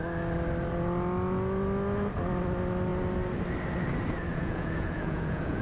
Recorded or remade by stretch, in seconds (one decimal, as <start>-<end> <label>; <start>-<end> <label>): 0.0-4.3 recorded; 4.3-5.6 remade